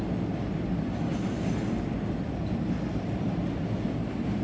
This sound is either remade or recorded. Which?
recorded